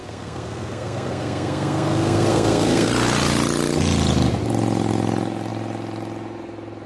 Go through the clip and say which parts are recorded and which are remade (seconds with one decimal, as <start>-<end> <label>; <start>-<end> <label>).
0.0-2.9 remade; 2.9-6.9 recorded